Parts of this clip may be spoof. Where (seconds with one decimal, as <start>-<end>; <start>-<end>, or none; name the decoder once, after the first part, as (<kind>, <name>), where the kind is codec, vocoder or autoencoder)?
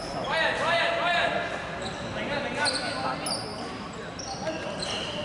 none